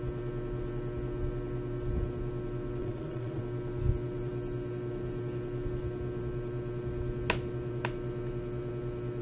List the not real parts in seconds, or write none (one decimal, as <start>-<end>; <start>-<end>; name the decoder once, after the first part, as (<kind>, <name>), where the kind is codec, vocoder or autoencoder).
2.8-3.4 (vocoder, Vocos)